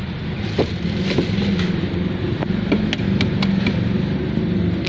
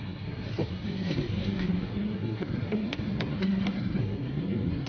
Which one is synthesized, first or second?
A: second